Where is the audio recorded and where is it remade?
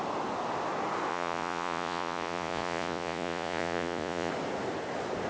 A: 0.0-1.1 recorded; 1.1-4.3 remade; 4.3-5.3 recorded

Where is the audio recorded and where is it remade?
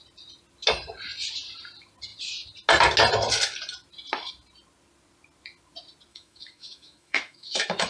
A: 0.0-6.1 recorded; 6.1-7.9 remade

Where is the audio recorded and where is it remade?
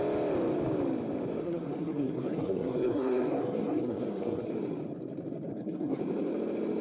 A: 0.0-1.4 recorded; 1.4-4.5 remade; 4.5-5.5 recorded; 5.5-6.0 remade; 6.0-6.8 recorded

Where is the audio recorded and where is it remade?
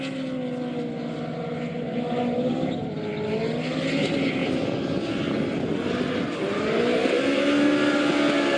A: 0.0-8.6 recorded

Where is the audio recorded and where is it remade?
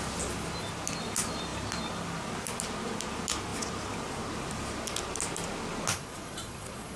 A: 0.0-5.9 recorded; 5.9-7.0 remade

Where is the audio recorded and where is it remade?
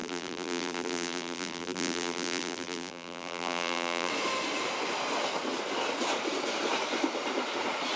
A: 0.0-4.1 remade; 4.1-8.0 recorded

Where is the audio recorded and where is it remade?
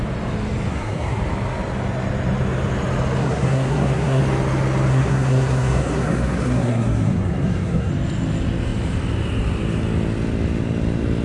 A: 0.0-0.7 recorded; 0.7-1.2 remade; 1.2-3.2 recorded; 3.2-4.2 remade; 4.2-4.9 recorded; 4.9-7.9 remade; 7.9-11.2 recorded